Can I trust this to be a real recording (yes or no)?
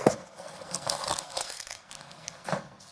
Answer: no